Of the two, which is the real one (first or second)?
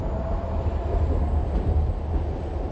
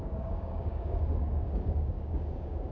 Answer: first